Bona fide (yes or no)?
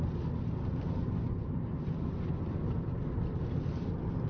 yes